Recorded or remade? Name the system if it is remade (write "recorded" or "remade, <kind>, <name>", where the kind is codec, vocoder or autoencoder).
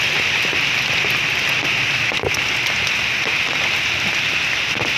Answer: recorded